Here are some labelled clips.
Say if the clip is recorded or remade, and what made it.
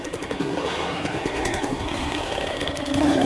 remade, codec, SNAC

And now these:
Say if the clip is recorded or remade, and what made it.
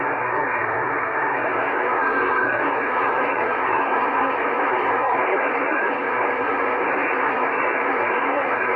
remade, codec, SNAC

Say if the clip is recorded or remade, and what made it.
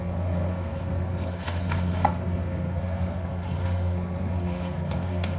remade, codec, SNAC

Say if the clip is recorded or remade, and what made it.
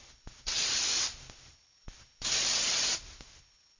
recorded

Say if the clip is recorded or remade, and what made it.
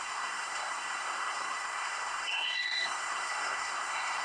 remade, codec, SNAC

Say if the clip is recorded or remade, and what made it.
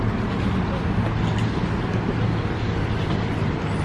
recorded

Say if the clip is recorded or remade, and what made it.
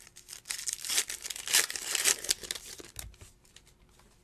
recorded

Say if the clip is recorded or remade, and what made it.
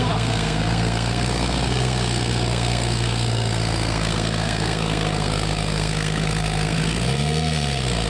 remade, codec, SNAC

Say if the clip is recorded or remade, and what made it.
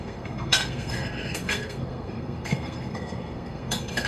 remade, codec, SNAC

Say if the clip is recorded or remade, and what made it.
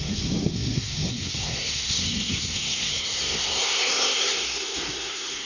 remade, codec, SNAC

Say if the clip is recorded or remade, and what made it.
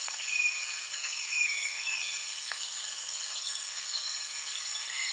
remade, codec, SNAC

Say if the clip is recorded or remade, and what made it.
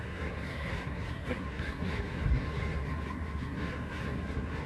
remade, codec, SNAC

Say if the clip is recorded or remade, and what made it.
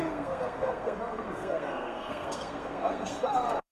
remade, codec, SNAC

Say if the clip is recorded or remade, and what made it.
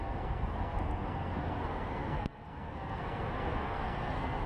remade, codec, SNAC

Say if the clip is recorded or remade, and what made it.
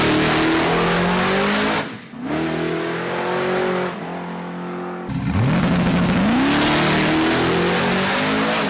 recorded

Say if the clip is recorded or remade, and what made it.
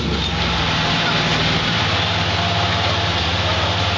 recorded